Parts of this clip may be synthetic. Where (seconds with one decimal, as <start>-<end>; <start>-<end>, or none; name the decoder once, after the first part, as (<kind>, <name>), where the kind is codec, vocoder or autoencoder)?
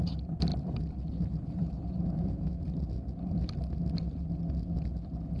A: 0.5-3.7 (vocoder, BigVGAN v2)